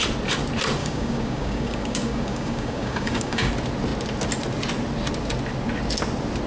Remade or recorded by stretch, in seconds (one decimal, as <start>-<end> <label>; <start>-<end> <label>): 0.0-0.8 recorded; 0.8-3.5 remade; 3.5-6.5 recorded